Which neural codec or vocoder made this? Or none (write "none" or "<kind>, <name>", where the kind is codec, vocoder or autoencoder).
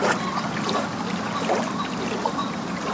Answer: none